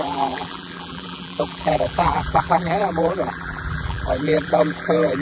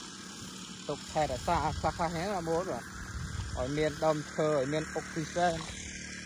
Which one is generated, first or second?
first